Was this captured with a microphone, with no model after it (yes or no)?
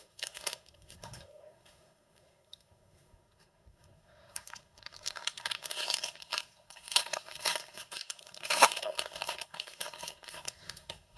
no